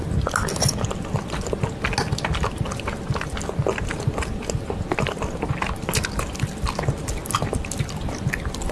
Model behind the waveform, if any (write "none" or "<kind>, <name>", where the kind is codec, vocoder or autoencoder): none